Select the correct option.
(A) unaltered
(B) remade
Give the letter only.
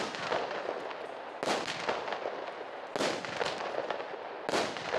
A